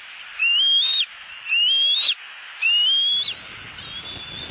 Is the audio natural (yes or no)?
yes